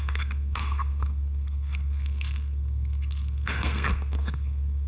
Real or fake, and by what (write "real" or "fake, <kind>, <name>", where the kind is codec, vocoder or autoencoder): fake, codec, SNAC